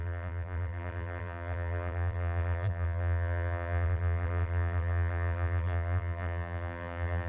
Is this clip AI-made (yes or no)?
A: yes